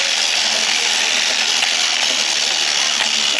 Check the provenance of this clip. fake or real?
real